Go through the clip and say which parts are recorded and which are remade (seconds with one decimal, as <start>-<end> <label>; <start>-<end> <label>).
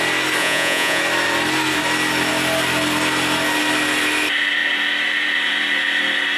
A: 0.0-0.4 recorded; 0.4-1.0 remade; 1.0-6.4 recorded